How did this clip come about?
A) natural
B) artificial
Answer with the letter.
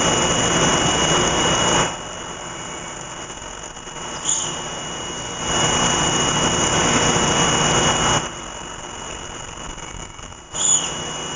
A